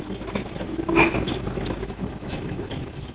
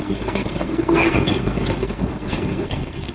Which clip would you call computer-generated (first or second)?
second